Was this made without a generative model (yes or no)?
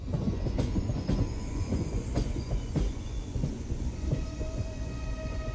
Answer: no